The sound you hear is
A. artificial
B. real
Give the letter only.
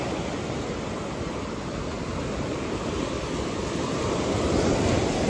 B